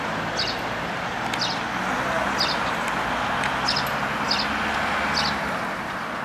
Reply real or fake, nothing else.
real